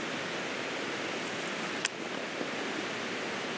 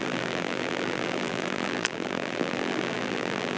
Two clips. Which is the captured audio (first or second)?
first